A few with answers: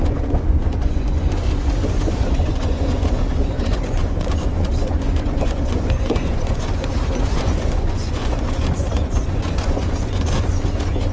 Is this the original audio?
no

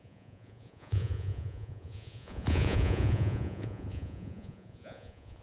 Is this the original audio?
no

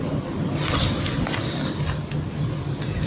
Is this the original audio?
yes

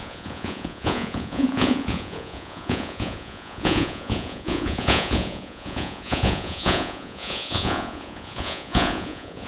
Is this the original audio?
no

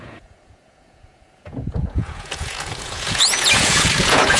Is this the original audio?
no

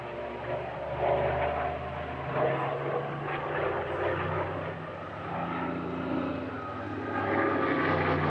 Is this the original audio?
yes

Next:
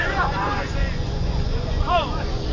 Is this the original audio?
no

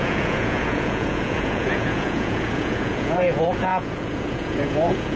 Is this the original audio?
no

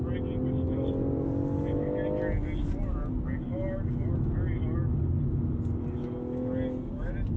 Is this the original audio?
yes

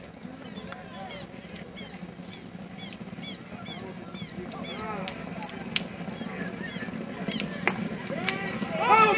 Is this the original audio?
yes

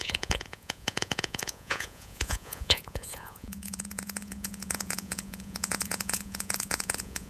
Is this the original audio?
no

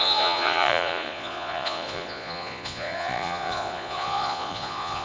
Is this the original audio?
no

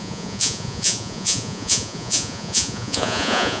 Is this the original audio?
no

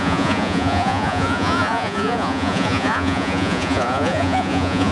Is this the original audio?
no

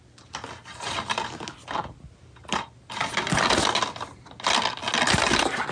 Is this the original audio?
yes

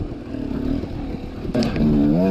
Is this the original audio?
yes